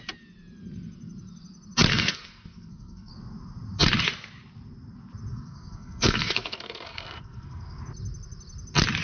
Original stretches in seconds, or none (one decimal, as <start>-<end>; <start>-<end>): 0.0-1.9; 3.1-5.3; 7.8-9.0